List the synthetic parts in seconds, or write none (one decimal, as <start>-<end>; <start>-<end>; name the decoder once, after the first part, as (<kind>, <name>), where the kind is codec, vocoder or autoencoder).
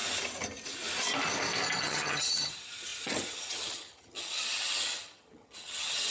1.8-6.1 (vocoder, HiFi-GAN)